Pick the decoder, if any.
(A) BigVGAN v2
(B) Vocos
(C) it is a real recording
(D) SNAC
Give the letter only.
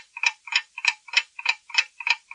A